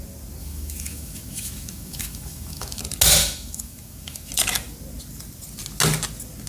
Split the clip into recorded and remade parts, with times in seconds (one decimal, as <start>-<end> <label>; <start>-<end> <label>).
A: 0.0-0.4 recorded; 0.4-2.8 remade; 2.8-3.2 recorded; 3.2-4.3 remade; 4.3-6.5 recorded